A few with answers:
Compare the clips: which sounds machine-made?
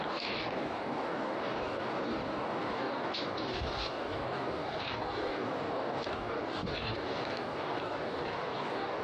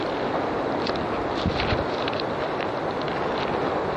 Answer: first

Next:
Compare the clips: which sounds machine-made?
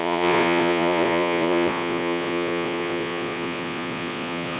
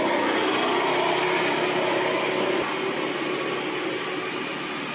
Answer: first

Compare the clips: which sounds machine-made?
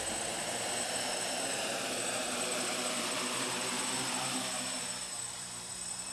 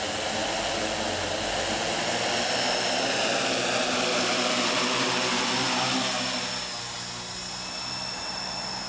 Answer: first